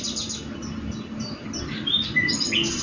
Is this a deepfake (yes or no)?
no